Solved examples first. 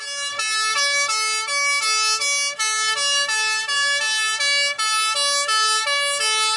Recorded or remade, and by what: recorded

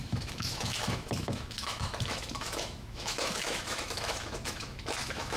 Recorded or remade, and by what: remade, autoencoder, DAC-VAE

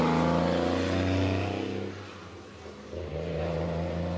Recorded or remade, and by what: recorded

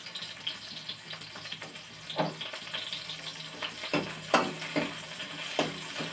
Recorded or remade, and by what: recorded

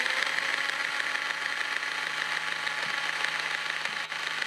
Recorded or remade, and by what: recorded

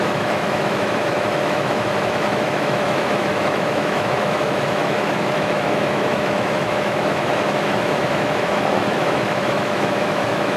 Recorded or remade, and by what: remade, autoencoder, DAC-VAE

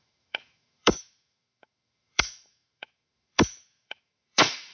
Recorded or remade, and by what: remade, autoencoder, DAC-VAE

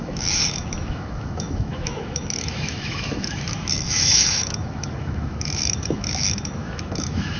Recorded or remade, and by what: remade, autoencoder, DAC-VAE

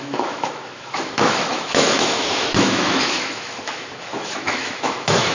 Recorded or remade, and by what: remade, autoencoder, DAC-VAE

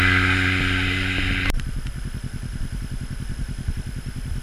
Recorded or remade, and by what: recorded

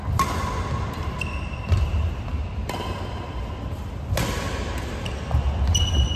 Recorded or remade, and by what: recorded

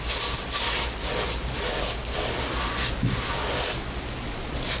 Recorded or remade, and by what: recorded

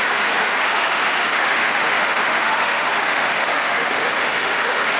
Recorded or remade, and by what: remade, autoencoder, DAC-VAE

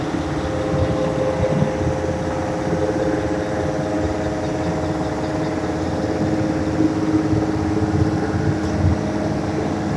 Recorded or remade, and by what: recorded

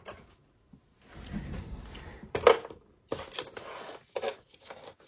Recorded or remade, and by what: recorded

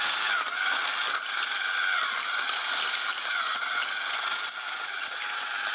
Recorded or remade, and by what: recorded